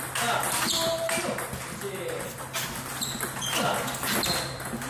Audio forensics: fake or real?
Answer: real